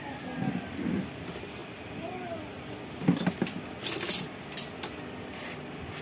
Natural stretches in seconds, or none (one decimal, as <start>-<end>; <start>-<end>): 0.0-6.0